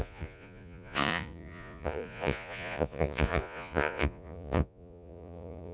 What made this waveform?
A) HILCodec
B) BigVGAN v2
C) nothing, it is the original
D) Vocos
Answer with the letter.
D